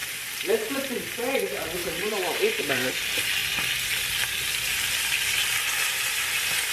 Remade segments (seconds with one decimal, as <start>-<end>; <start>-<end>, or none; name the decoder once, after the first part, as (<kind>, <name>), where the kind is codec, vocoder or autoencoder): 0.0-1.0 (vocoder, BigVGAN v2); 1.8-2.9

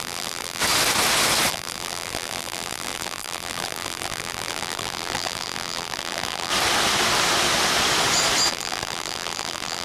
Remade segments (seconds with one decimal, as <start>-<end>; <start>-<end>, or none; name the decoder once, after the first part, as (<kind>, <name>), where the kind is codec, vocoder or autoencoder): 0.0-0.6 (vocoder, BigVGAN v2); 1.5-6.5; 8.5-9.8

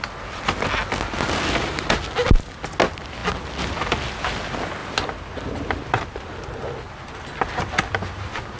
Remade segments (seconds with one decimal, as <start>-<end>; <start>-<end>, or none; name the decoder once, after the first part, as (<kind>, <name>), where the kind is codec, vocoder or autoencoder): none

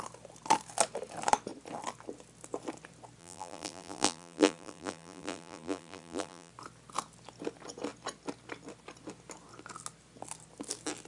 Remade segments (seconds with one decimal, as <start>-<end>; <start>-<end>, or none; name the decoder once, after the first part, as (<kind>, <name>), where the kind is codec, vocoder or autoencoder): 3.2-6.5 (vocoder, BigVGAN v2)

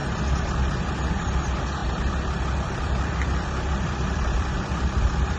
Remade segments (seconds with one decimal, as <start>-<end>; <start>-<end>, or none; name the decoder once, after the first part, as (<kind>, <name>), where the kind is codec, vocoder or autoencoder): 0.0-0.9 (vocoder, BigVGAN v2); 1.8-5.0

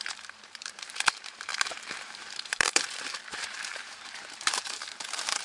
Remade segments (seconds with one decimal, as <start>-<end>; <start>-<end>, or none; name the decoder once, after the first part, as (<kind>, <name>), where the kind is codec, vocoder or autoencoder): 0.0-5.4 (vocoder, BigVGAN v2)